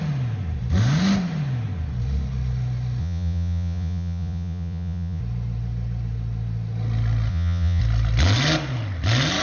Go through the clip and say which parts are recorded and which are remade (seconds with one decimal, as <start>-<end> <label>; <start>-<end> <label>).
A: 0.0-3.0 recorded; 3.0-5.2 remade; 5.2-7.3 recorded; 7.3-7.8 remade; 7.8-9.4 recorded